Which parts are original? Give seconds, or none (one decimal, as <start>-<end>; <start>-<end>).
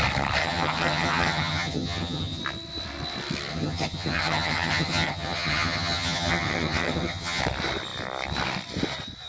0.0-0.4; 2.4-3.5; 7.4-9.3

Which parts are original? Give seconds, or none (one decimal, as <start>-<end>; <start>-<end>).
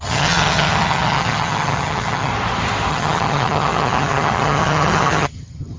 2.3-2.9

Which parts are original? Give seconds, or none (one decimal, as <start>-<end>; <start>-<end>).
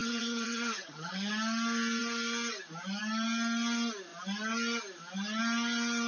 1.3-6.1